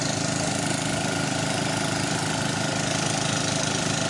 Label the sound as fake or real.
real